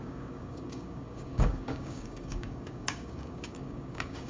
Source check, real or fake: fake